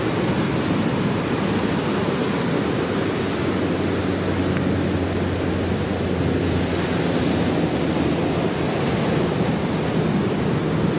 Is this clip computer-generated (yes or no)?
no